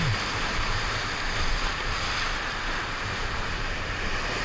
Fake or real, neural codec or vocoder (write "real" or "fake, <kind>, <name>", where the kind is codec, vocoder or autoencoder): real